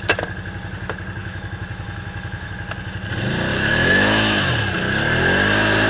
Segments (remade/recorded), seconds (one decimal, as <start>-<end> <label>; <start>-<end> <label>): 0.0-1.2 recorded; 1.2-2.5 remade; 2.5-3.5 recorded; 3.5-4.5 remade; 4.5-5.9 recorded